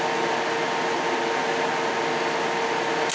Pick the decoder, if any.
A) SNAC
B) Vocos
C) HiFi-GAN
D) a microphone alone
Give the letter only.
D